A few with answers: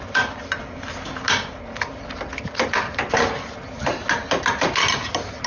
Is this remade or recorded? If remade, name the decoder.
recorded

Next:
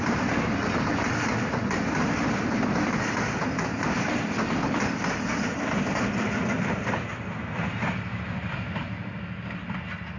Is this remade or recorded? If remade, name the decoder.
recorded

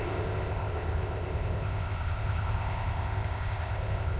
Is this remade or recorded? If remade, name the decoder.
remade, codec, ZipCodec